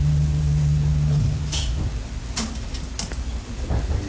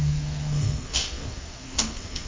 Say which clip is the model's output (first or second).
second